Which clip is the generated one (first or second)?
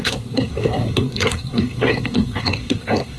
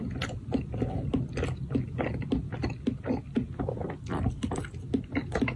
first